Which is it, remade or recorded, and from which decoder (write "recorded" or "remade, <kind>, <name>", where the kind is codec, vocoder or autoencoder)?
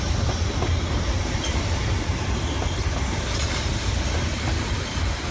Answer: recorded